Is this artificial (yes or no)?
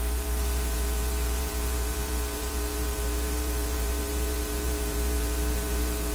yes